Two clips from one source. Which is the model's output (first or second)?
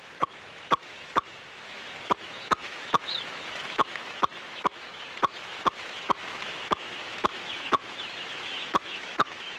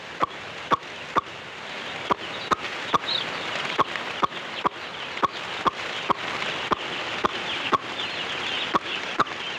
first